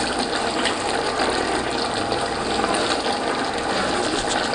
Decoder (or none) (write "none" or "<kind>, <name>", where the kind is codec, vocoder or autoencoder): none